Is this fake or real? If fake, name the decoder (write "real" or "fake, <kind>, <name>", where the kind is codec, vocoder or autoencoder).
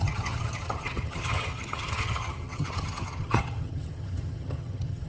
fake, vocoder, HiFi-GAN